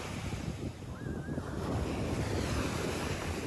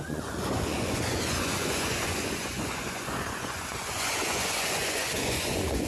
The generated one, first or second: second